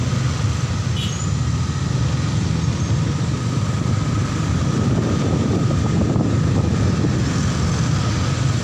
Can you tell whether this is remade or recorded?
recorded